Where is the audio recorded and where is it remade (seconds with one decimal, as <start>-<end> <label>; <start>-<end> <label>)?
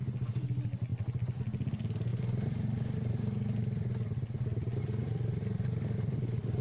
0.0-6.6 recorded